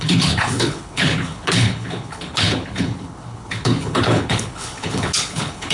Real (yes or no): no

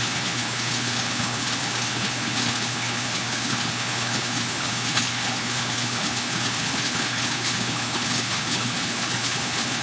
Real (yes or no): no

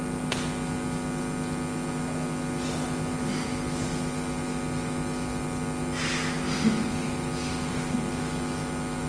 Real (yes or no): yes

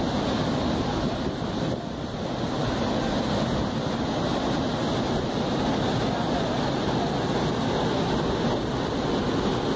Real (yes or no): yes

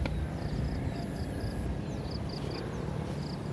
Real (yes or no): yes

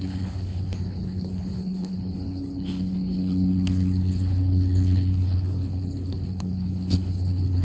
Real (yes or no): no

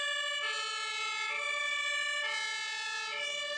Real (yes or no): yes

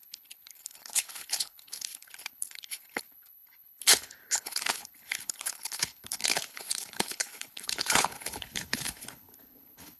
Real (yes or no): no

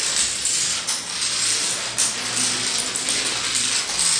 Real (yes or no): yes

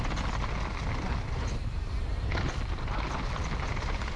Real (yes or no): yes